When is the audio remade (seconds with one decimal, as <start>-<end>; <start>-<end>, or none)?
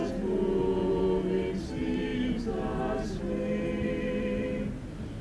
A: 0.0-1.0